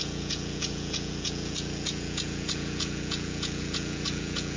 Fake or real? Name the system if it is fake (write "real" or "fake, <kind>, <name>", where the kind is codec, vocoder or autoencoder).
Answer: fake, vocoder, Vocos